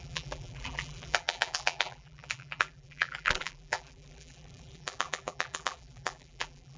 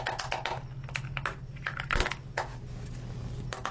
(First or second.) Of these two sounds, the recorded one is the second